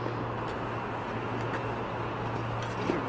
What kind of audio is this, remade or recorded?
recorded